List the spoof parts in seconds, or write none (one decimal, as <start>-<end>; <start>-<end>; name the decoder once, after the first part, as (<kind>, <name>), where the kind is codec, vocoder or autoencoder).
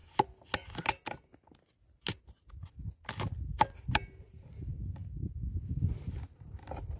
none